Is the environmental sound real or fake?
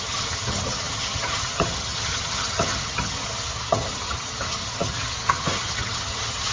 fake